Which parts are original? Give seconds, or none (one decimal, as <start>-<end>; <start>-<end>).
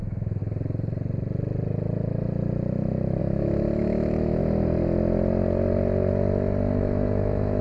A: 0.4-3.2; 4.4-6.8